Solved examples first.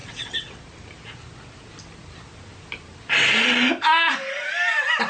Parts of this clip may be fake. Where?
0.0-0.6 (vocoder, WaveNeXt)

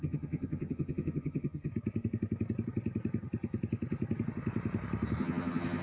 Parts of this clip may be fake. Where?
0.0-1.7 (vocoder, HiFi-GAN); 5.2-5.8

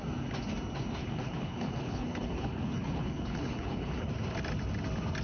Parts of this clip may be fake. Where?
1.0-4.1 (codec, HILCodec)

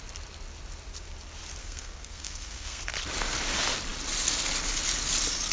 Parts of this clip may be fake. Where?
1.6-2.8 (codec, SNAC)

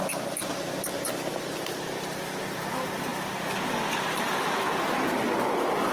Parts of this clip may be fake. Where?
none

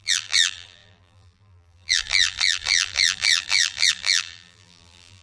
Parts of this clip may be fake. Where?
0.0-5.2 (vocoder, BigVGAN v2)